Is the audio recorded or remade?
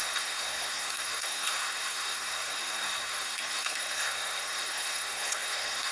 remade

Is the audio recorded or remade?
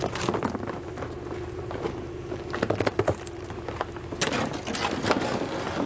recorded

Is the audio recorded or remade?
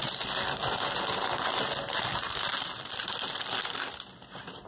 recorded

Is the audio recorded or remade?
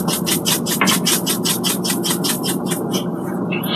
recorded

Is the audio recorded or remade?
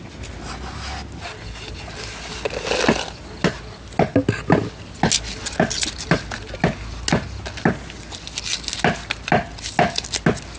recorded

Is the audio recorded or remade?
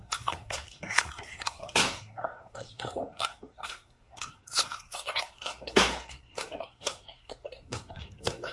remade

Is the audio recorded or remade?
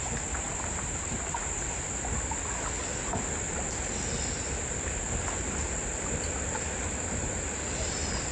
recorded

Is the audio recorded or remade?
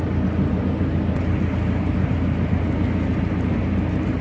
recorded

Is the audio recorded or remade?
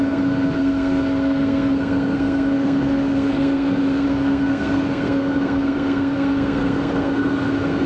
remade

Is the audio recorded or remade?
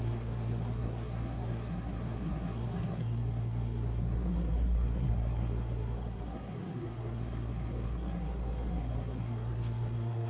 remade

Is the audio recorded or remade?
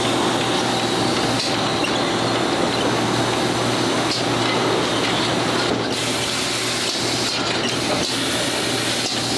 recorded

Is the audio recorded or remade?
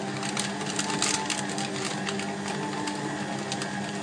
recorded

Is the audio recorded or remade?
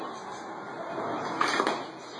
recorded